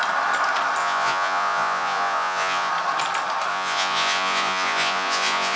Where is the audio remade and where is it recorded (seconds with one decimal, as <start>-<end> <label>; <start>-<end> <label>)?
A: 0.0-0.8 recorded; 0.8-2.7 remade; 2.7-3.5 recorded; 3.5-5.6 remade